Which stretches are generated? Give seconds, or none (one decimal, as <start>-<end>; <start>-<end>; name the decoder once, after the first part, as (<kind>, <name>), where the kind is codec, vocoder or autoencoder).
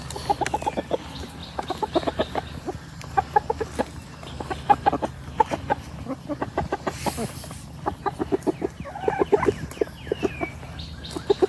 none